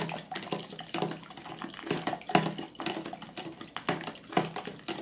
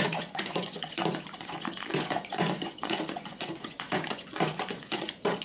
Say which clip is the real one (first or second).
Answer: first